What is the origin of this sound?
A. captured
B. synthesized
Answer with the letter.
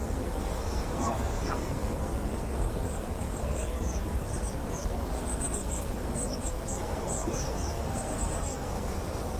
B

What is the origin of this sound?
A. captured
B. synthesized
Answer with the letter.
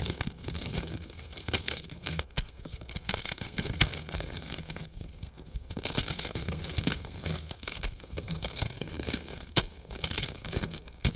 B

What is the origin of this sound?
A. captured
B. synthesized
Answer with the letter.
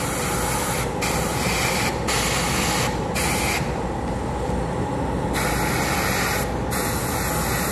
A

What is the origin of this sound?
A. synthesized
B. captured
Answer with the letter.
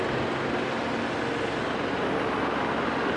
B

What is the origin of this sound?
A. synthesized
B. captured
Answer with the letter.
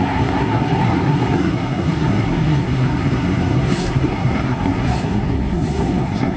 A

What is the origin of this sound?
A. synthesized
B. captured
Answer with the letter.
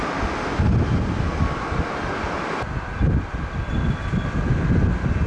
B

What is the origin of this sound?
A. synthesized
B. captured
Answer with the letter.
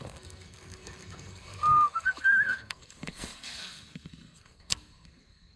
A